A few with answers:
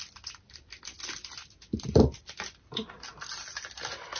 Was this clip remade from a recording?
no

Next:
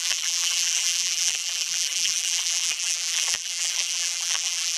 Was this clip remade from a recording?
yes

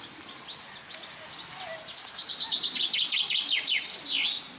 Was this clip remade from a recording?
no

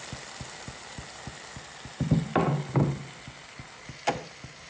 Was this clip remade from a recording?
no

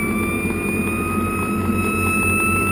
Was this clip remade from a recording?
no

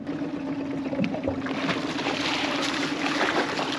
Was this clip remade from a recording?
no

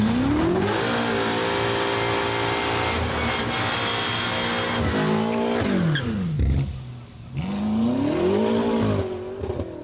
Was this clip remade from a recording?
no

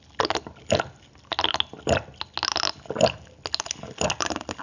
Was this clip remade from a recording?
no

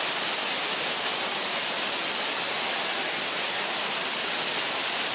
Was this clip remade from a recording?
no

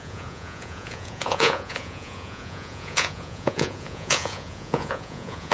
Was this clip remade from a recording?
yes